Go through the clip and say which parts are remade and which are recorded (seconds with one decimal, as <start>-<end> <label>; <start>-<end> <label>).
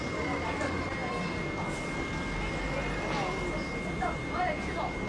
0.0-5.1 recorded